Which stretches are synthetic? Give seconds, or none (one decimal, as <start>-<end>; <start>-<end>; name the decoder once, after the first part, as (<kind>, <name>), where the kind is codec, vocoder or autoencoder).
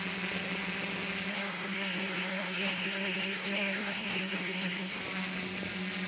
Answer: 1.3-5.0 (codec, SNAC)